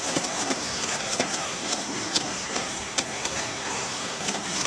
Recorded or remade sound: remade